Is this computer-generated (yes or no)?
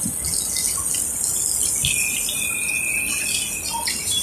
no